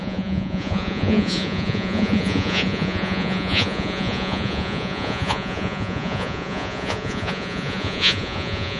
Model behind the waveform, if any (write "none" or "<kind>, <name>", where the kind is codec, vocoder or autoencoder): vocoder, Vocos